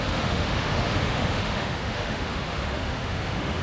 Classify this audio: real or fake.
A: fake